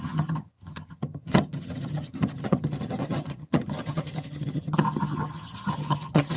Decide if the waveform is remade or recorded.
remade